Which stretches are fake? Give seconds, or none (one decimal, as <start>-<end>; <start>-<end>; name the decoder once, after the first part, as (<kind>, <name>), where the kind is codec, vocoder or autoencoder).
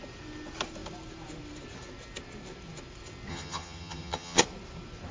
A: 3.3-4.4 (vocoder, HiFi-GAN)